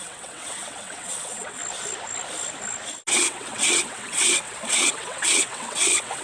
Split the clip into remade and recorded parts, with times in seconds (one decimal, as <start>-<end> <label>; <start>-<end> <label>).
0.0-1.6 remade; 1.6-3.1 recorded; 3.1-6.2 remade